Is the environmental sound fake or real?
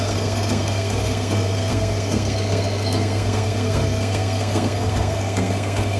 fake